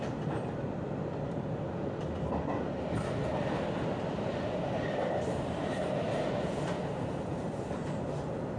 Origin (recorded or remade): recorded